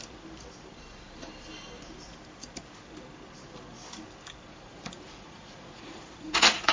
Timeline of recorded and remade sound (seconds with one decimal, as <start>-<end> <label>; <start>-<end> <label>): 0.0-4.5 recorded; 4.5-6.7 remade